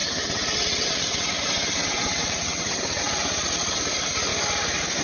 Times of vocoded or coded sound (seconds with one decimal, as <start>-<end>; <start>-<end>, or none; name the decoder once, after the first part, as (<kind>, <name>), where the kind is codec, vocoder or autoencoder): 0.0-3.0 (vocoder, WaveNeXt)